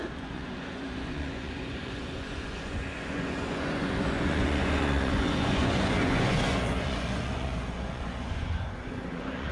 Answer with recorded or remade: remade